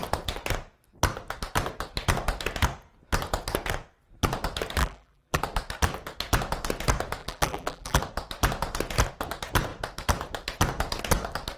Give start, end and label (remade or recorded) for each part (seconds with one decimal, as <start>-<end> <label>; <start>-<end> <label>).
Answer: 0.0-4.8 recorded; 4.8-5.4 remade; 5.4-7.2 recorded; 7.2-8.0 remade; 8.0-11.6 recorded